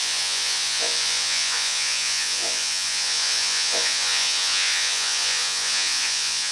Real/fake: fake